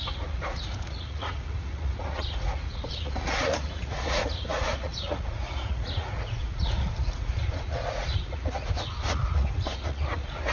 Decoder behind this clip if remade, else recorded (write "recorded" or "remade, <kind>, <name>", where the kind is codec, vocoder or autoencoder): remade, vocoder, Vocos